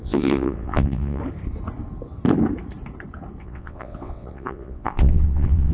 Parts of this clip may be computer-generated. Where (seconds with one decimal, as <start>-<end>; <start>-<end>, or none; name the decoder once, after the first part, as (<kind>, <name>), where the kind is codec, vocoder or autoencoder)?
0.0-1.2 (vocoder, WaveNeXt); 3.4-5.7